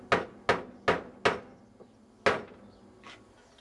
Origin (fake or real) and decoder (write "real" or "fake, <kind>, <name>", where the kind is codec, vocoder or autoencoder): real